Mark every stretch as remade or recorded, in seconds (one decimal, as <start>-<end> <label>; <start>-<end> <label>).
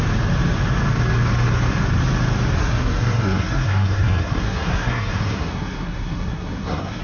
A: 0.0-2.6 recorded; 2.6-7.0 remade